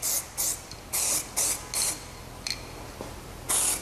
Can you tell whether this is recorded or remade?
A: recorded